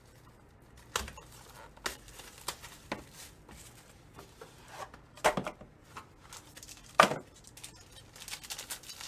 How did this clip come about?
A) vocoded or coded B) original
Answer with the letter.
B